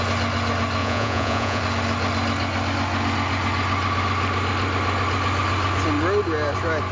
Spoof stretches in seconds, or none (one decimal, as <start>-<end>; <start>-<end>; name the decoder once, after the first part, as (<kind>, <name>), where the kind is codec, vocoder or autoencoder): 0.8-1.6 (vocoder, Vocos)